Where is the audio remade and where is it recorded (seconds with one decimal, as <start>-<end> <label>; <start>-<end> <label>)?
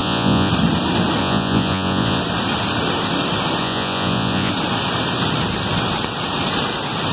0.0-0.5 remade; 0.5-1.2 recorded; 1.2-2.2 remade; 2.2-3.6 recorded; 3.6-4.5 remade; 4.5-7.1 recorded